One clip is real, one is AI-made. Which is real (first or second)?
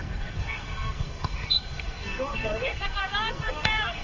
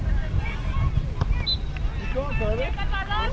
second